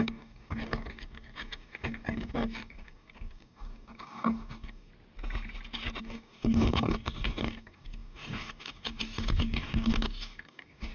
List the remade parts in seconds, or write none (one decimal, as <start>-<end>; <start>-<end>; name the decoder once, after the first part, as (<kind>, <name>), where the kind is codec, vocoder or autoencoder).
0.0-4.9 (codec, DAC); 6.0-10.9